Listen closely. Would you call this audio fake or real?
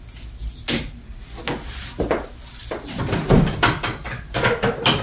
real